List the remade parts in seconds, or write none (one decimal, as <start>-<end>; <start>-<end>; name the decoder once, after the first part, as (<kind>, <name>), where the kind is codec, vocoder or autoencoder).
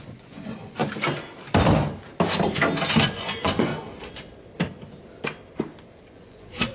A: 0.0-0.8 (vocoder, Vocos); 3.0-3.7; 6.1-6.7